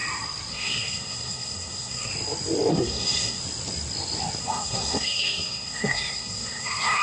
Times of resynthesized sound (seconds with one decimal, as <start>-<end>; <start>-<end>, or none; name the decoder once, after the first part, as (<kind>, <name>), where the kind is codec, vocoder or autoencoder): 0.5-2.1 (codec, SNAC); 2.7-3.4; 4.4-7.0